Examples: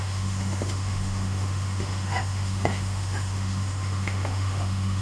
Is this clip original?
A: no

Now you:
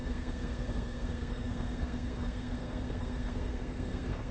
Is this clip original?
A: no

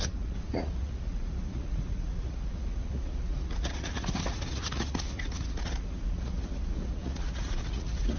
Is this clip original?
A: no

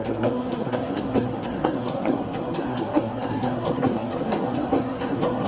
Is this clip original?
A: no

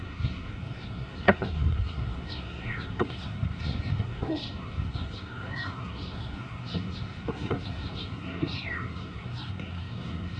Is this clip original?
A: no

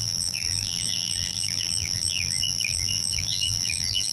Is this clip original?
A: no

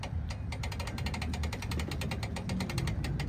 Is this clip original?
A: yes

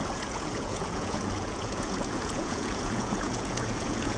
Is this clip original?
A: no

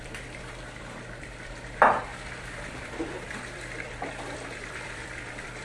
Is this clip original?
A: no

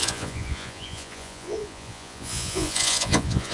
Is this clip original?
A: no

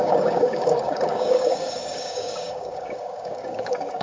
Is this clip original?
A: no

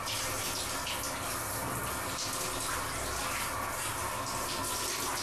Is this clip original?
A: yes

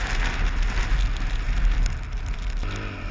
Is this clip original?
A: yes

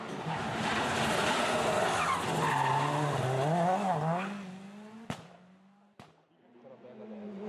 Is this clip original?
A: yes